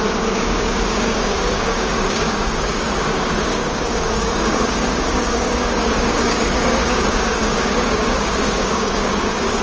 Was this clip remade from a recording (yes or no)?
yes